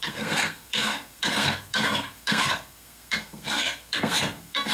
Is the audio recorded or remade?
remade